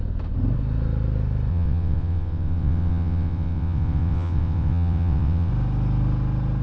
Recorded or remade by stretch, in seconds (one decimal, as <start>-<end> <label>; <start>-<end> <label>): 0.0-1.5 recorded; 1.5-5.5 remade; 5.5-6.6 recorded